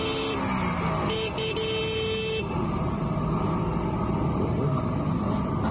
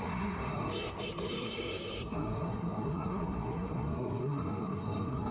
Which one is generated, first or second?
second